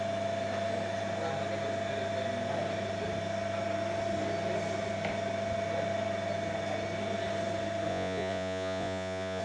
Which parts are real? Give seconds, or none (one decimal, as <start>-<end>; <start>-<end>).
0.0-7.9